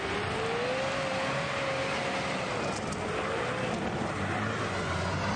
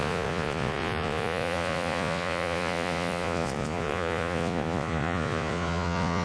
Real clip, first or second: first